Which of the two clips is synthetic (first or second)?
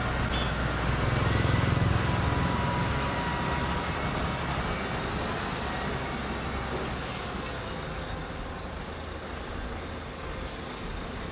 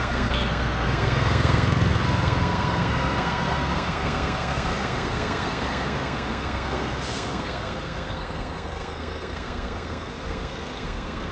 second